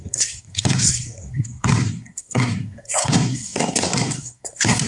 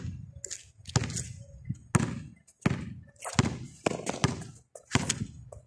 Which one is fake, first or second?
first